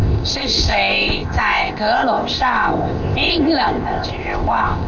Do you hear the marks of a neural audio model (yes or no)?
yes